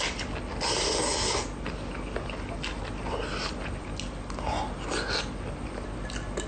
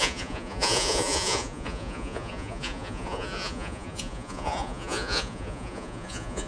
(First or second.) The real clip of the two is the first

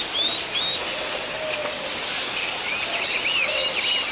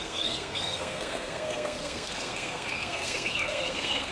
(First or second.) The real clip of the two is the first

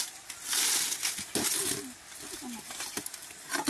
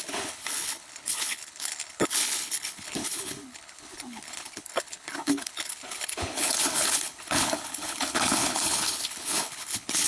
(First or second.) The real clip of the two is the first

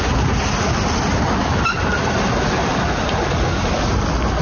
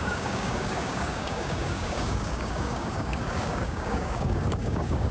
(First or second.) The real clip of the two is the first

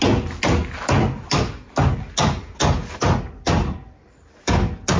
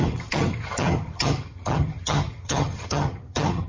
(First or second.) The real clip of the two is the first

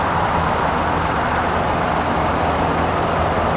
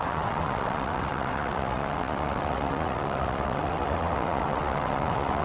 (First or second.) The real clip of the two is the first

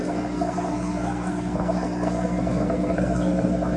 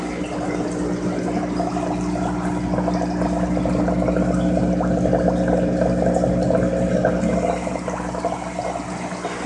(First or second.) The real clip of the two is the second